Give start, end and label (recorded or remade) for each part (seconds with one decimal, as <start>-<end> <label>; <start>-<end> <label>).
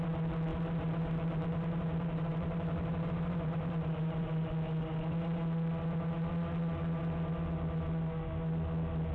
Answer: 0.0-0.5 recorded; 0.5-4.5 remade; 4.5-9.1 recorded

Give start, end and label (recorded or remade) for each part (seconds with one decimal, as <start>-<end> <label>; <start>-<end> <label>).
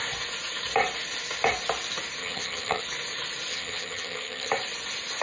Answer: 0.0-2.2 recorded; 2.2-2.8 remade; 2.8-3.5 recorded; 3.5-4.5 remade; 4.5-5.2 recorded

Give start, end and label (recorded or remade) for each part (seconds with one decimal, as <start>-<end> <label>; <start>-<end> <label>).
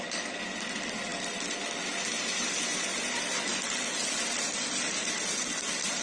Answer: 0.0-6.0 recorded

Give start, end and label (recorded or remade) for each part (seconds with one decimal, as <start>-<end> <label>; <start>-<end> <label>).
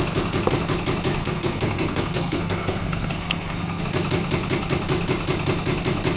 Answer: 0.0-1.2 recorded; 1.2-3.8 remade; 3.8-6.2 recorded